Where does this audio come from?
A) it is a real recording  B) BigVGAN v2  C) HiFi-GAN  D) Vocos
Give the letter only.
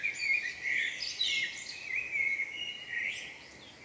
A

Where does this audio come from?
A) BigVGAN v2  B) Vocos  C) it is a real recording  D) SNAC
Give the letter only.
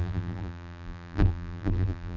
A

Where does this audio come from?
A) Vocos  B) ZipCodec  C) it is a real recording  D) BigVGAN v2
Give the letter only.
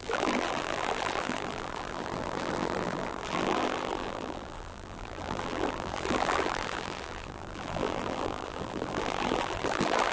D